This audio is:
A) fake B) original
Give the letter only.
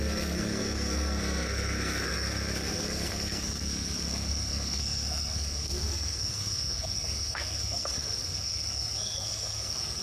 A